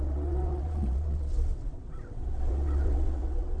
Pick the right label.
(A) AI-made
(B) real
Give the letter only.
A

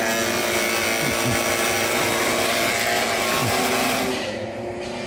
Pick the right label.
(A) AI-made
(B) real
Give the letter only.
B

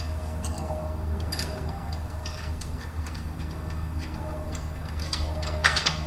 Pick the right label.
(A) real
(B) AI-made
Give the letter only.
B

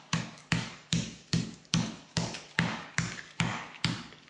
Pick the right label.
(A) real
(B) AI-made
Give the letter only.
B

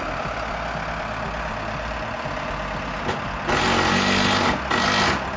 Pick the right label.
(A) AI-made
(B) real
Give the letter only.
B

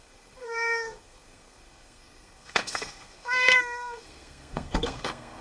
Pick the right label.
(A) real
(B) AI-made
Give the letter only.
B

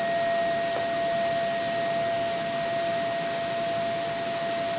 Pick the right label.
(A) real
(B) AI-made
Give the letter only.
A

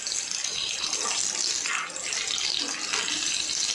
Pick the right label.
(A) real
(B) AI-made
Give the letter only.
A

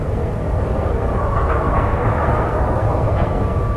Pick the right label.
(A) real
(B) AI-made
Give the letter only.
B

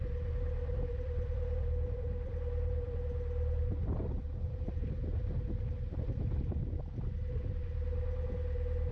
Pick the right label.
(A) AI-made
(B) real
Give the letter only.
A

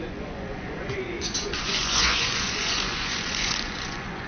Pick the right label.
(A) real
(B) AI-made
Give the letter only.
B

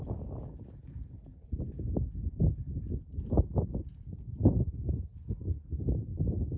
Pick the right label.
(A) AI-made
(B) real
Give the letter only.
B